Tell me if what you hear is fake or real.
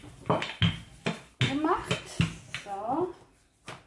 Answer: real